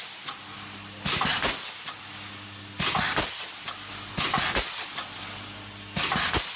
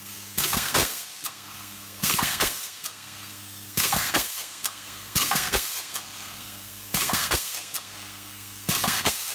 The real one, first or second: first